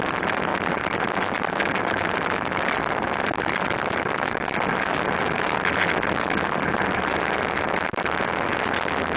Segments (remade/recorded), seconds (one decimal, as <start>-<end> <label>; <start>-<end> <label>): 0.0-9.2 recorded